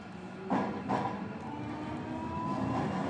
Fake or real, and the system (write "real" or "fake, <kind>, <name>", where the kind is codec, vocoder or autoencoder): real